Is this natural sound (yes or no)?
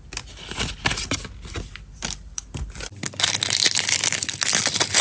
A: yes